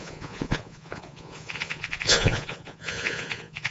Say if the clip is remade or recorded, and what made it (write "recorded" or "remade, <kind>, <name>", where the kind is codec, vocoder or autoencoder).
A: remade, vocoder, Vocos